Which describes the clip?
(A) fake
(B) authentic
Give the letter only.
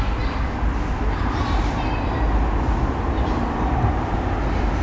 B